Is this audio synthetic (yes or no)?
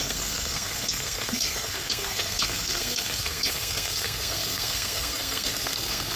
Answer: yes